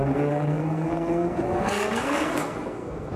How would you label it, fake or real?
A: fake